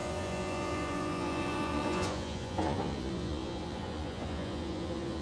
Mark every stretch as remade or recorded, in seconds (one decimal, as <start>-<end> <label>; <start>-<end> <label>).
0.0-5.2 remade